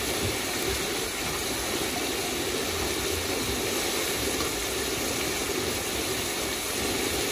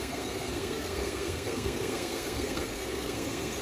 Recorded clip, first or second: first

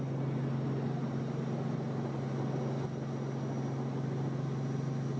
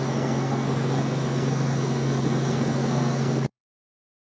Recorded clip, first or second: first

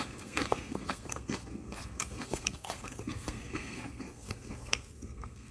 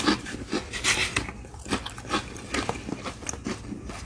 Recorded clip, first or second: second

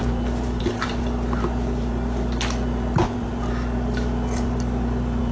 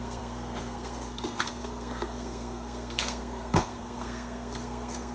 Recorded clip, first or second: first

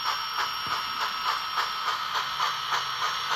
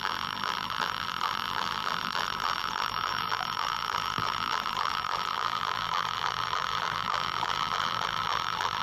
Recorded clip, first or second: first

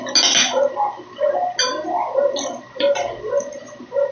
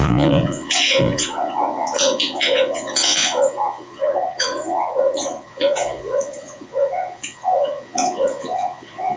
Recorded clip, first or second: first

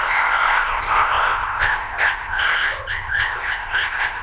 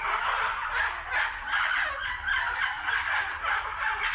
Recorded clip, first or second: second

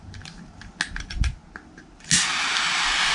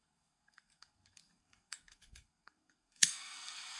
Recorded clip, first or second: first